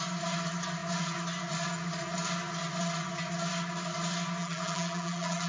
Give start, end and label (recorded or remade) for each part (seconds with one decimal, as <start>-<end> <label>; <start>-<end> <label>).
0.0-4.4 recorded; 4.4-5.5 remade